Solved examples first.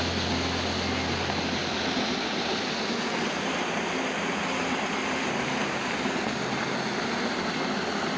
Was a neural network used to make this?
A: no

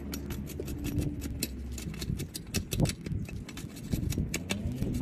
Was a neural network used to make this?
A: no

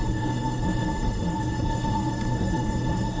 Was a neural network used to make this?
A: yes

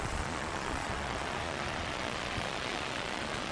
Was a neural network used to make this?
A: yes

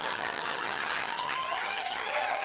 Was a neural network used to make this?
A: yes